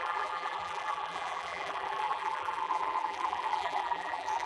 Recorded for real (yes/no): no